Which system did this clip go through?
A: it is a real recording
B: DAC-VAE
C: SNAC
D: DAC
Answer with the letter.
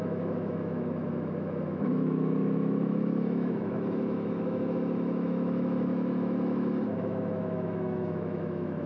B